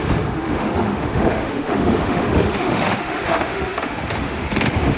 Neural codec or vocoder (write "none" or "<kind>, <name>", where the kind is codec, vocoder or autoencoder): autoencoder, DAC-VAE